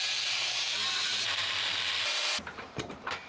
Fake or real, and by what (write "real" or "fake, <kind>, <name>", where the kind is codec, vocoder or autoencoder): fake, vocoder, BigVGAN v2